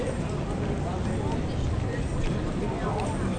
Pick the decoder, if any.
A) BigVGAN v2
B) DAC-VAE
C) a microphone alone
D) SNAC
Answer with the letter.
C